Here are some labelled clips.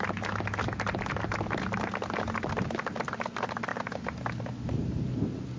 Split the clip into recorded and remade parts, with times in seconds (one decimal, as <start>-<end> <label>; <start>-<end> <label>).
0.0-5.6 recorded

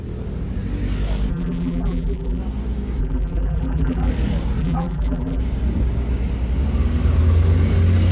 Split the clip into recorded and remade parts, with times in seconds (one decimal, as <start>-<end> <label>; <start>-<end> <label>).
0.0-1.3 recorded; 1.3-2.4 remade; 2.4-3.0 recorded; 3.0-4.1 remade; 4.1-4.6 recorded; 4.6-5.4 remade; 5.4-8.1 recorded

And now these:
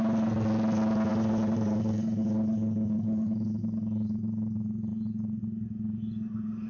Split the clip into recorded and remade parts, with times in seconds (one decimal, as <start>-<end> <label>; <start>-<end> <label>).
0.0-1.1 recorded; 1.1-2.2 remade; 2.2-6.7 recorded